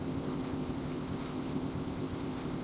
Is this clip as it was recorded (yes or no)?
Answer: no